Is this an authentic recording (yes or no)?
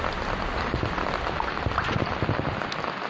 yes